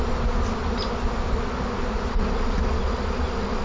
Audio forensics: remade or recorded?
recorded